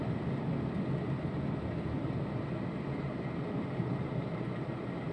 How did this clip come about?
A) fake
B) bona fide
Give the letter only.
B